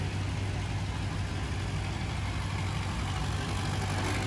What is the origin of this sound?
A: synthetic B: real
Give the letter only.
B